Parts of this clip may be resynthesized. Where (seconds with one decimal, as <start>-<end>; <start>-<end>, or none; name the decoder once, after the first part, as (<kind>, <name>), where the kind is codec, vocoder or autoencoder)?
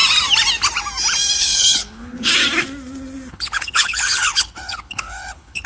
1.4-2.3 (codec, HILCodec); 3.3-5.7